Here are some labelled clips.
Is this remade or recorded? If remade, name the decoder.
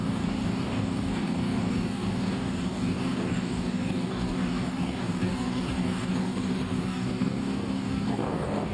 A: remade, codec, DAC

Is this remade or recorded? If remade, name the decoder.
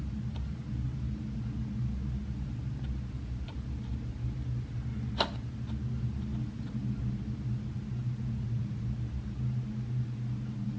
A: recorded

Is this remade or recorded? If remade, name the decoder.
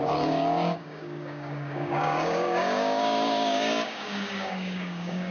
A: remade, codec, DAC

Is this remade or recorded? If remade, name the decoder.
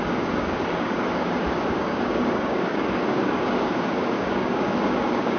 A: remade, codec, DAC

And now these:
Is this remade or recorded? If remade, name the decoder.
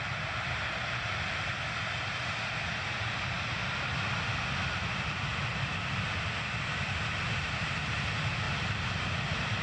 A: recorded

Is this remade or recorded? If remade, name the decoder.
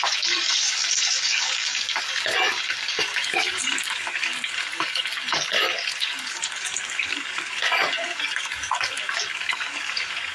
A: remade, codec, DAC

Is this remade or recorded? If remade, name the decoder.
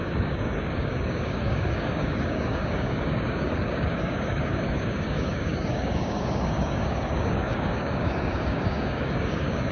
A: remade, codec, DAC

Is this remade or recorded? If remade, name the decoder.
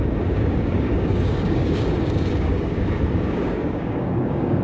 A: remade, codec, DAC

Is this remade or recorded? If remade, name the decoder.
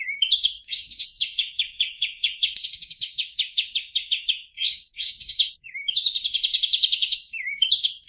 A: remade, codec, DAC